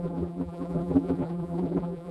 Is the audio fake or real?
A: fake